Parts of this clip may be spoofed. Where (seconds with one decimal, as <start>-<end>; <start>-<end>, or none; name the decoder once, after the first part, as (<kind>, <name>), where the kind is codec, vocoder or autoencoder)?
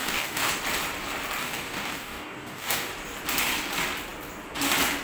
0.0-0.5 (codec, DAC); 1.4-2.9